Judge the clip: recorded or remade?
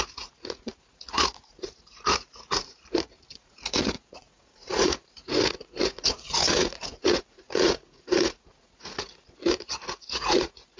remade